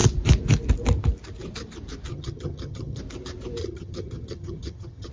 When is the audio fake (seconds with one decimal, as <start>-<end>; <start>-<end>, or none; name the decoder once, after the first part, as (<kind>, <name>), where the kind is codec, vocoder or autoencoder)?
2.1-3.0 (vocoder, HiFi-GAN); 3.6-5.1